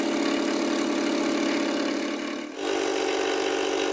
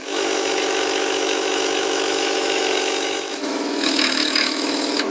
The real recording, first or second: first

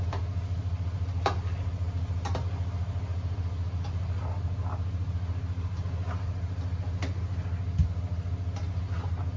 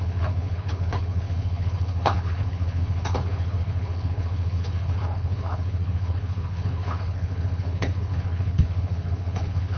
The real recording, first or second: first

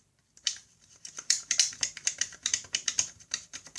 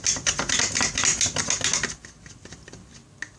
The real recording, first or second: second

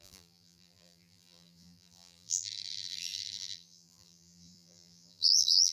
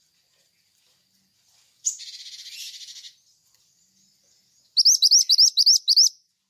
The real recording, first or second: second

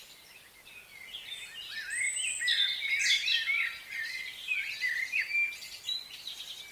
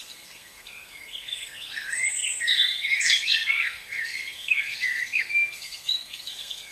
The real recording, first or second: first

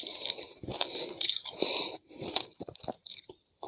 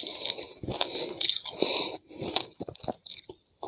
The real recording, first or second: second